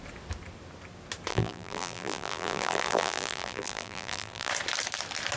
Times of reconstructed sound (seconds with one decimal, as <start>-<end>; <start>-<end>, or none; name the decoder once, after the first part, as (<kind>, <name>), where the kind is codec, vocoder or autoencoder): 1.3-4.5 (vocoder, BigVGAN v2)